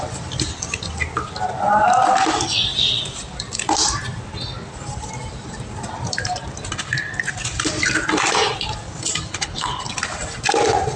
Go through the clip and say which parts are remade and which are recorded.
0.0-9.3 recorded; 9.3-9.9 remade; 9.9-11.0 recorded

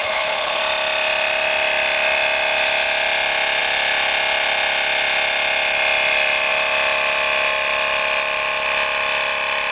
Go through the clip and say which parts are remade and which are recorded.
0.0-0.6 remade; 0.6-9.7 recorded

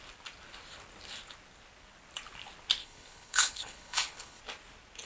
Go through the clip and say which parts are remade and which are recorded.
0.0-2.8 recorded; 2.8-4.4 remade; 4.4-5.1 recorded

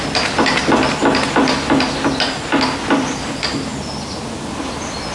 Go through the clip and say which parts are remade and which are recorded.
0.0-5.1 recorded

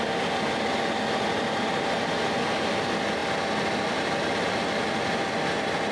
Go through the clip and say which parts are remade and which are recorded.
0.0-5.9 recorded